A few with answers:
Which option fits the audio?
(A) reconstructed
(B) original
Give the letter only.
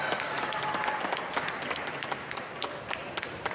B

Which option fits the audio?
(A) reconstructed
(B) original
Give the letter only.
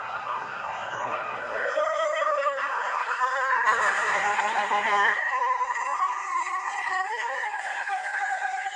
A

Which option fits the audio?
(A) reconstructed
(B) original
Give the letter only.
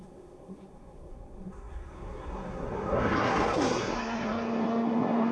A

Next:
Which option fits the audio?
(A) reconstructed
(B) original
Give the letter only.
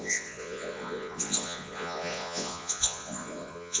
A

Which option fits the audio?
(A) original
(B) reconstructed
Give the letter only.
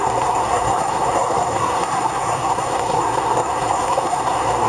B